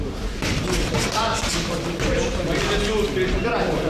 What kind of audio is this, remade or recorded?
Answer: recorded